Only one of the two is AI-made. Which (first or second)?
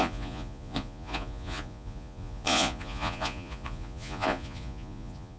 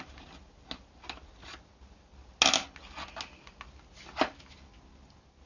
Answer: first